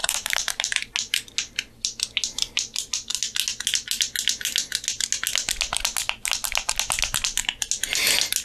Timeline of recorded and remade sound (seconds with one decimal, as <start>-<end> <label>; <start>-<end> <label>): 0.0-0.9 remade; 0.9-8.4 recorded